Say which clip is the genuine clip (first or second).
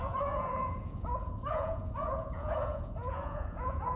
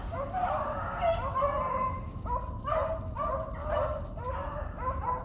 second